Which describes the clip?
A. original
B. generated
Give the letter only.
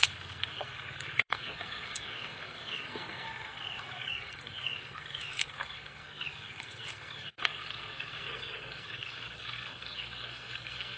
B